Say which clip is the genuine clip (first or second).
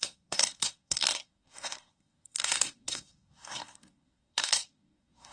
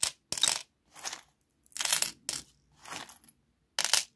second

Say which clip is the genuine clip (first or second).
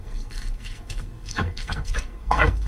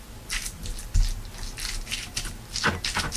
second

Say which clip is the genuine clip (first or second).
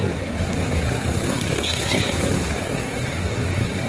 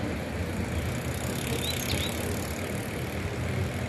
second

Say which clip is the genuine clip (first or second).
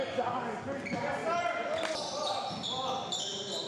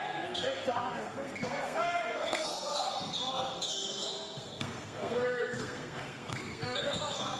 first